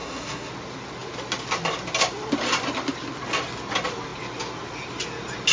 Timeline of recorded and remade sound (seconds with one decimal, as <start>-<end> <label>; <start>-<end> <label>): 0.0-0.5 remade; 0.5-5.5 recorded